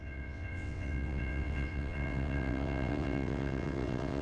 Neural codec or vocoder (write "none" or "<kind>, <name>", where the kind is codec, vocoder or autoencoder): vocoder, WaveNeXt